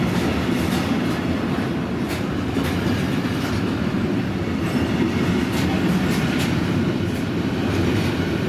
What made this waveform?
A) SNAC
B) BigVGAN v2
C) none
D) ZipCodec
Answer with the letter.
C